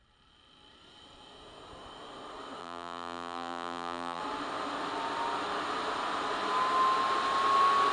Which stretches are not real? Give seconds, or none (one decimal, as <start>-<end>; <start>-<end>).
2.6-4.2